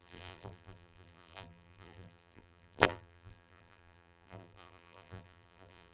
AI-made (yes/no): yes